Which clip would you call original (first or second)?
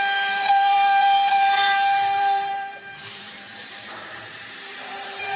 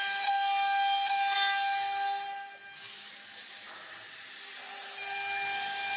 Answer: second